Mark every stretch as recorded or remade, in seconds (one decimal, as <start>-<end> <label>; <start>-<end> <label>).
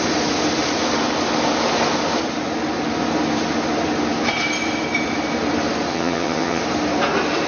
0.0-5.9 recorded; 5.9-6.6 remade; 6.6-7.5 recorded